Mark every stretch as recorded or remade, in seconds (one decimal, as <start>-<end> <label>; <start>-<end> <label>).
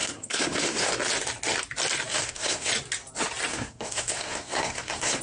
0.0-0.9 remade; 0.9-2.1 recorded; 2.1-2.7 remade; 2.7-3.5 recorded; 3.5-5.2 remade